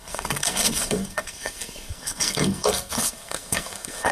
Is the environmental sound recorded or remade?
remade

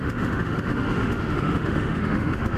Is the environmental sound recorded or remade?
remade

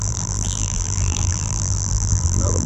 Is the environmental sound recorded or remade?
remade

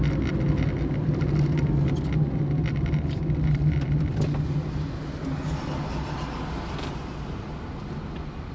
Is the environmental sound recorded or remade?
recorded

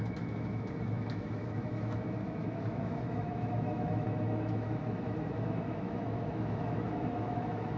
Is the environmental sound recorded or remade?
remade